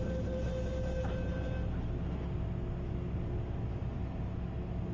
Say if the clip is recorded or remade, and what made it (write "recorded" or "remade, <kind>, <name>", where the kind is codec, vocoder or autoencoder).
recorded